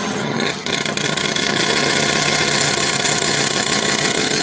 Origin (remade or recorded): remade